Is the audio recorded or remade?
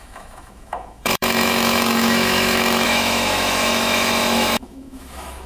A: remade